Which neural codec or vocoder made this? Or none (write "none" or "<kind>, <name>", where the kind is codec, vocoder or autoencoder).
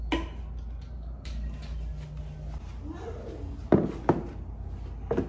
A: none